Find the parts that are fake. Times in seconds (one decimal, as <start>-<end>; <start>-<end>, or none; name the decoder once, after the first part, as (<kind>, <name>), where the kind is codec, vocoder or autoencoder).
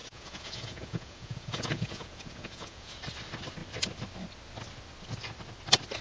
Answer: 0.0-3.0 (vocoder, Vocos)